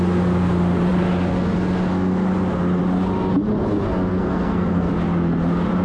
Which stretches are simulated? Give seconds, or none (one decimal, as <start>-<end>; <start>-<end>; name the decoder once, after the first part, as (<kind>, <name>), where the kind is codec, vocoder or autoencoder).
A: 4.1-4.9 (codec, SNAC)